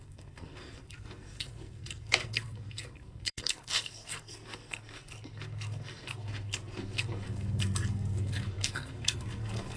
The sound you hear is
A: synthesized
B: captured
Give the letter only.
A